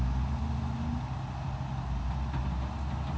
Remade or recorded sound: recorded